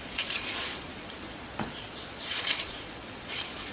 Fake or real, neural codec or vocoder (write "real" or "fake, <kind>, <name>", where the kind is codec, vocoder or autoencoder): fake, vocoder, Vocos